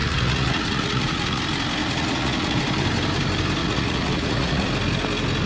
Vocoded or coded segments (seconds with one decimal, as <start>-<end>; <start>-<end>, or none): 0.0-1.4; 1.8-2.6; 3.6-4.7